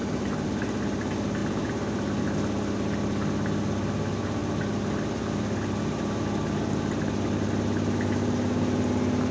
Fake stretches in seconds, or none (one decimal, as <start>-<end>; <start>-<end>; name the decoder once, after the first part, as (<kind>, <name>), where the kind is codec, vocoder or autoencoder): none